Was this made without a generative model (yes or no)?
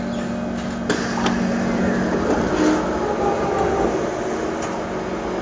yes